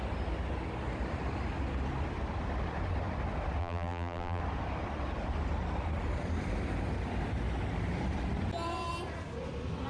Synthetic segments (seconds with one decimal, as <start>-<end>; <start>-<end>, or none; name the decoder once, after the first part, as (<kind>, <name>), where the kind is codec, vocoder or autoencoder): 3.6-4.4 (vocoder, BigVGAN v2)